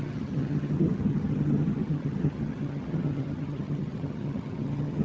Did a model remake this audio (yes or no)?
yes